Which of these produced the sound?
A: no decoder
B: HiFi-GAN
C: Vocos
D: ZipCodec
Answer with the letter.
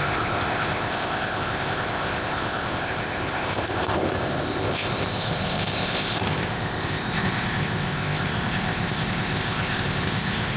D